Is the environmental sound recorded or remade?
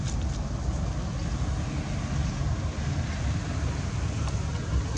recorded